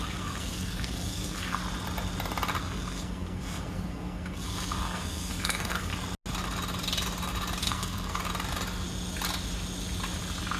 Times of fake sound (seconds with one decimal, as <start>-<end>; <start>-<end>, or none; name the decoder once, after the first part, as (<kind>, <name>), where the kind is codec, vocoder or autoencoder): 0.0-1.6 (codec, SNAC); 2.6-5.9; 7.6-8.2